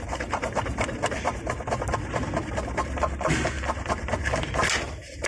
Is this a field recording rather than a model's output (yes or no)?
yes